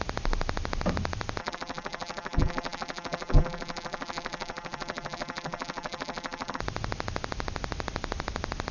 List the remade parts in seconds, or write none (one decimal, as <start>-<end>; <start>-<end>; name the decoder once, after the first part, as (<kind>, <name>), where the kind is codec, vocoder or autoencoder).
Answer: 1.4-6.6 (vocoder, BigVGAN v2)